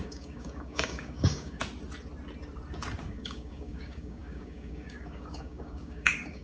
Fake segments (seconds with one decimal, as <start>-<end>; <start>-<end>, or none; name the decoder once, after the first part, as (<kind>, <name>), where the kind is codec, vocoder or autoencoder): 0.0-1.6 (codec, DAC); 3.0-6.4